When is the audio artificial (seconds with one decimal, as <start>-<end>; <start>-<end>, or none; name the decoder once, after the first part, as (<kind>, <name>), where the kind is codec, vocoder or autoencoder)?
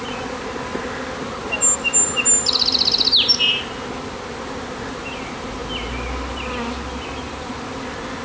none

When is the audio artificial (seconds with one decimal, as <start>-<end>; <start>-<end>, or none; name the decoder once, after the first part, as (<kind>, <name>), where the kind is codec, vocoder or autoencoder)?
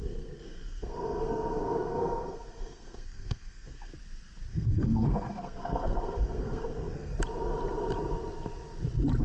0.0-3.9 (codec, SNAC); 4.5-7.1